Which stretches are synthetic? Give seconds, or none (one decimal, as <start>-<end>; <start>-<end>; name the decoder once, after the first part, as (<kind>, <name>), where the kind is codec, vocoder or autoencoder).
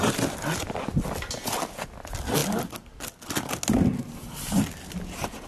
none